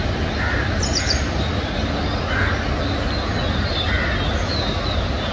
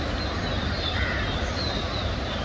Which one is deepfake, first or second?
second